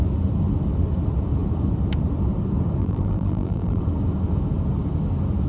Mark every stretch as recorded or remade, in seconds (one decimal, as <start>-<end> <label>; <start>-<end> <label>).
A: 0.0-2.8 recorded; 2.8-3.8 remade; 3.8-5.5 recorded